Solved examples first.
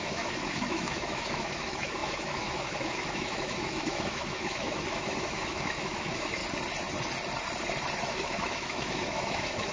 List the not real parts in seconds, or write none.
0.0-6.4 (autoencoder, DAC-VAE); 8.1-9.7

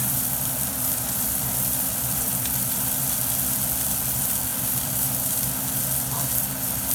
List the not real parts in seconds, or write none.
0.0-3.1 (vocoder, BigVGAN v2); 4.5-5.5

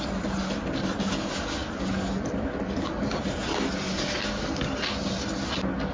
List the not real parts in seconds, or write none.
none

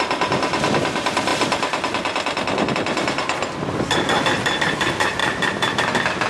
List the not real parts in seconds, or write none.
5.2-6.3 (vocoder, BigVGAN v2)

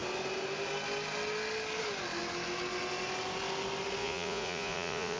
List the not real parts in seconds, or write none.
4.0-5.2 (vocoder, Vocos)

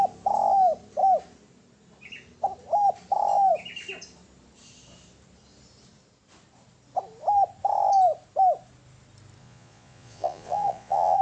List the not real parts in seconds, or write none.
9.4-11.2 (vocoder, Vocos)

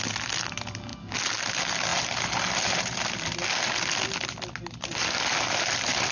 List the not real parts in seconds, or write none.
none

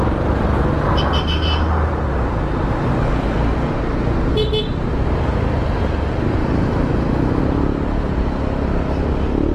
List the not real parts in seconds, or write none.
6.4-7.4 (autoencoder, DAC-VAE)